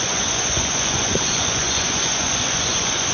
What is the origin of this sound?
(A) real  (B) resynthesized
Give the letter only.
B